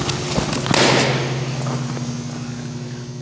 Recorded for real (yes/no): yes